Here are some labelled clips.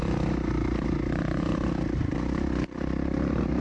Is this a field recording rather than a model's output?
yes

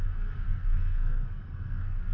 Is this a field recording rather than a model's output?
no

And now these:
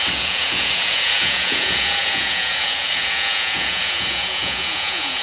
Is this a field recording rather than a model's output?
no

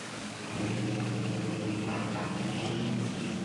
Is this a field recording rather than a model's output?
no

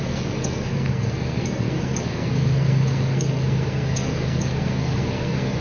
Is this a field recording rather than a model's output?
no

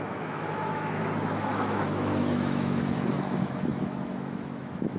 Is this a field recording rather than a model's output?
no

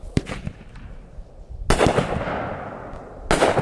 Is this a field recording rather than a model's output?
yes